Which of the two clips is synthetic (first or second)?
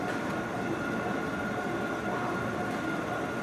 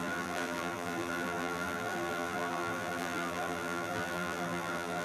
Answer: second